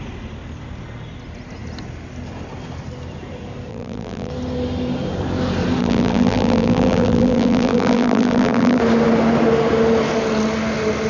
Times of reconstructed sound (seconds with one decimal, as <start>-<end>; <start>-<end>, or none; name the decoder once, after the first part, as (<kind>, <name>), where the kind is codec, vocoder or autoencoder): 3.7-4.3 (vocoder, BigVGAN v2); 5.8-8.8